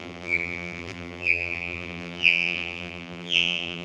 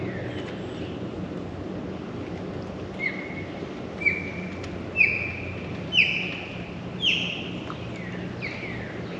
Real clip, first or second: second